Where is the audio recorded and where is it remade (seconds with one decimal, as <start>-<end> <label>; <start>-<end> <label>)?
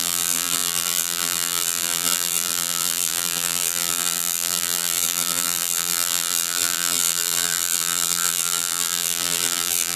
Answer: 0.0-10.0 remade